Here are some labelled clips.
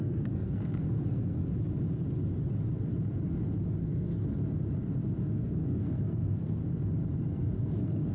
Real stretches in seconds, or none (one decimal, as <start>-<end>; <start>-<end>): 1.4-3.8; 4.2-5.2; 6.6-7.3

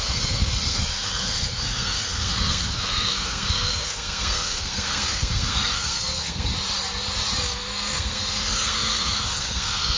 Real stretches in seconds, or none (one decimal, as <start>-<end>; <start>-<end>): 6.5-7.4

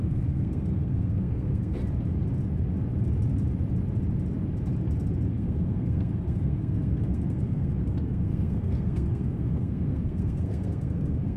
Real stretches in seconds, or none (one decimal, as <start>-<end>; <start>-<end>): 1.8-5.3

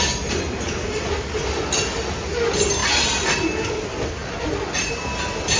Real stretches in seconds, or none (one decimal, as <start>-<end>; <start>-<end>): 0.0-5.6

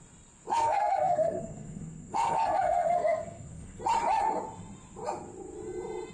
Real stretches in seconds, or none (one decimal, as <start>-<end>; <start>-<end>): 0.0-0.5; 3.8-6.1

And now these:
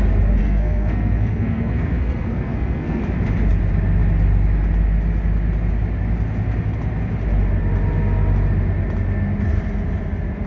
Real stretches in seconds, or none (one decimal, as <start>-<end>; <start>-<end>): 0.0-0.4; 3.0-10.5

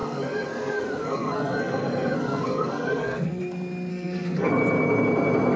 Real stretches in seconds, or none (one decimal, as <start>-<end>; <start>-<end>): 3.4-3.9; 4.5-5.6